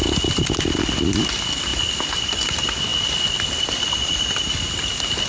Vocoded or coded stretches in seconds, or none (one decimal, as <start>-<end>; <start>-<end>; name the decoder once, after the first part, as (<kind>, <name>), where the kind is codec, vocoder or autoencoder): none